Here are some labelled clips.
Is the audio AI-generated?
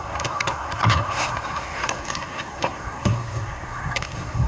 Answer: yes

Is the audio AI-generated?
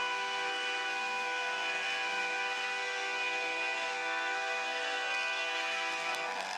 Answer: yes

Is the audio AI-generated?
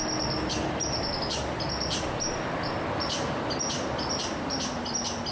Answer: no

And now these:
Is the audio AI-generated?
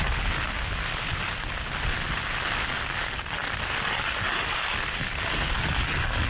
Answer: no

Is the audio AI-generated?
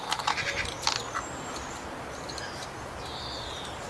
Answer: no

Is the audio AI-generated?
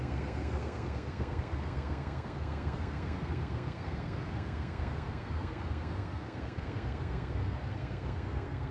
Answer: yes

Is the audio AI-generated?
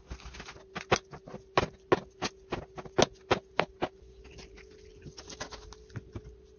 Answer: no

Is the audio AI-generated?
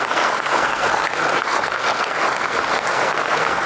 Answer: yes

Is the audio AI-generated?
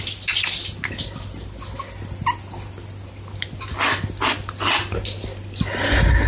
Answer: no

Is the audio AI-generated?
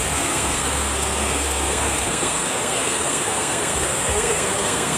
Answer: yes